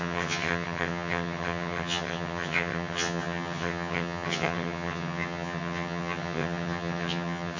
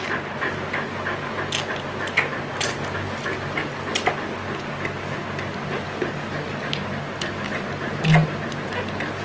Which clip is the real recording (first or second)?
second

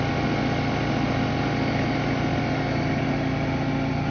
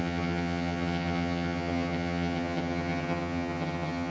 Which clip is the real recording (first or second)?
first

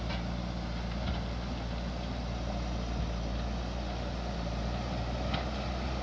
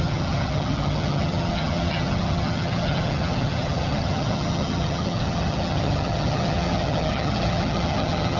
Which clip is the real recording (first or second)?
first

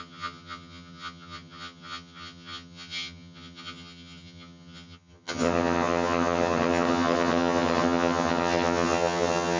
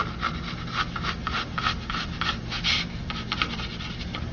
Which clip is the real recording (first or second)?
second